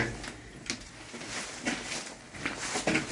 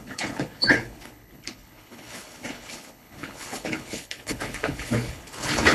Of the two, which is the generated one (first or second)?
second